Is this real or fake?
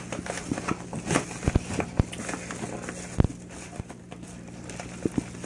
real